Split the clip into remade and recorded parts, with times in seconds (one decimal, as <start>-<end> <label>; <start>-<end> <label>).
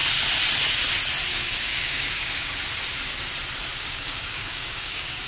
0.0-1.3 recorded; 1.3-2.5 remade; 2.5-3.8 recorded; 3.8-5.3 remade